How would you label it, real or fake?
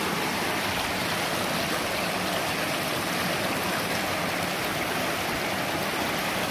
real